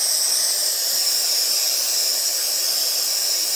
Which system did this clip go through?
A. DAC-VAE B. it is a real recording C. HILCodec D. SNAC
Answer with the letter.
B